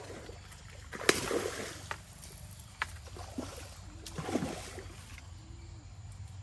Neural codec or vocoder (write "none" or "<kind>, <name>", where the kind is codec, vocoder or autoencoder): none